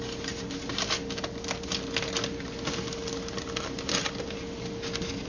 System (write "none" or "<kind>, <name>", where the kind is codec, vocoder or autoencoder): none